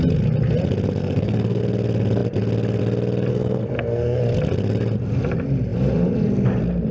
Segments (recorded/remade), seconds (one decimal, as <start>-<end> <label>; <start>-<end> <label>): 0.0-1.0 recorded; 1.0-1.6 remade; 1.6-3.3 recorded; 3.3-4.2 remade; 4.2-6.9 recorded